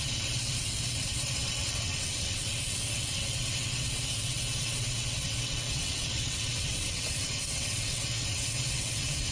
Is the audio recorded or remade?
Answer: remade